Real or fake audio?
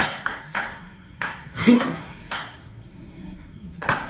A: fake